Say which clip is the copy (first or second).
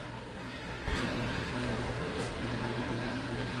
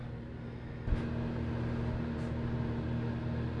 first